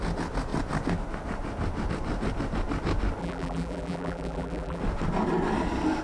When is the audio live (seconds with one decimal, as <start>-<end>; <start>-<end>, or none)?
0.0-3.2; 4.8-6.0